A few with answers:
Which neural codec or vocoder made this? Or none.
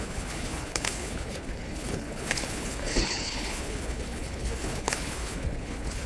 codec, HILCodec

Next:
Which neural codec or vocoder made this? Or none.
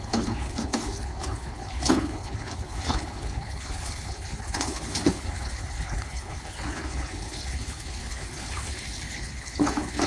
codec, HILCodec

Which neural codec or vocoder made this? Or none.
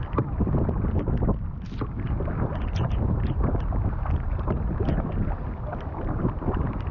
none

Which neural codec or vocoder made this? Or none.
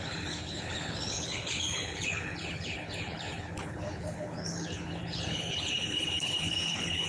codec, HILCodec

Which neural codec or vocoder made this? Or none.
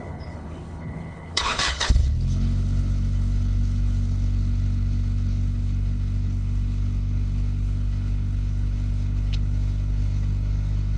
codec, HILCodec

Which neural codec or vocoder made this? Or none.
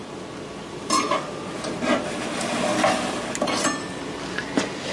none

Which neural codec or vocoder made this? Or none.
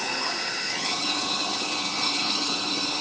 codec, HILCodec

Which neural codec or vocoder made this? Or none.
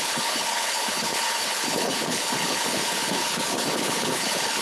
codec, HILCodec